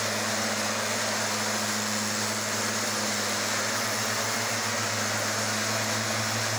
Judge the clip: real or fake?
real